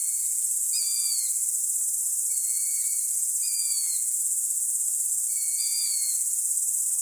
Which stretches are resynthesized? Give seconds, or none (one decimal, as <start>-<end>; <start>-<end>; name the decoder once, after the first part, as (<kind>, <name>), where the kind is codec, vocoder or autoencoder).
0.0-1.6 (vocoder, Vocos); 2.4-6.6